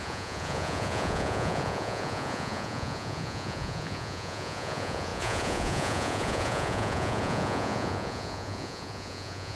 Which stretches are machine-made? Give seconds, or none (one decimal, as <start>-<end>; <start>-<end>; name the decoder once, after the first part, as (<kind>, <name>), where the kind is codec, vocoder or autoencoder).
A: 0.0-9.6 (vocoder, Vocos)